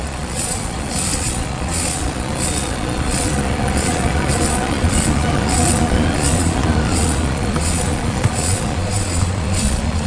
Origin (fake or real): fake